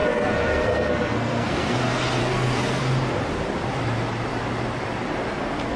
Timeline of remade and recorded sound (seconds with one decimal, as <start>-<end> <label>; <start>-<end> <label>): 0.0-1.8 remade; 1.8-2.2 recorded; 2.2-2.8 remade; 2.8-5.8 recorded